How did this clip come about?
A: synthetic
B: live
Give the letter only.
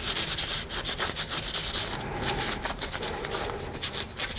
B